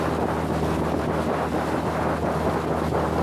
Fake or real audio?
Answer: real